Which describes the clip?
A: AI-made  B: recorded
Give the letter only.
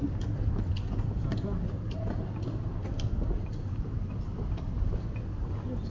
B